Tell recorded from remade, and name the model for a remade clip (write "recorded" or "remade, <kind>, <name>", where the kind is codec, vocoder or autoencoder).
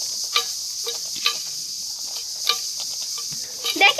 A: recorded